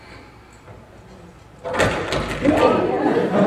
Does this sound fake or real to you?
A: real